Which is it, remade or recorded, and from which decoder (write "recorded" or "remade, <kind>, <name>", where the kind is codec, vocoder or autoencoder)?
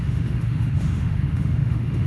remade, autoencoder, DAC-VAE